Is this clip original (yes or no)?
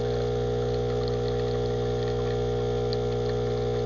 yes